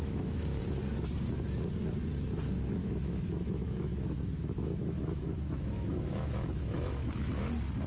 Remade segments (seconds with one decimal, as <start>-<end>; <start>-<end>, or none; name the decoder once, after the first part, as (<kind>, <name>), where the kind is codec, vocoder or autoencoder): 0.0-0.6 (autoencoder, DAC-VAE); 2.8-7.5